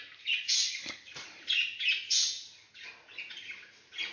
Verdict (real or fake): real